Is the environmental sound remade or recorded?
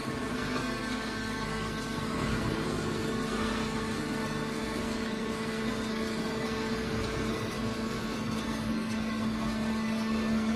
remade